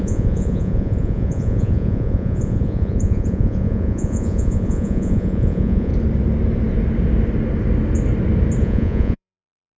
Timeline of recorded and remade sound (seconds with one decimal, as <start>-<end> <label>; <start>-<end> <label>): 0.0-5.9 remade; 5.9-8.6 recorded; 8.6-9.8 remade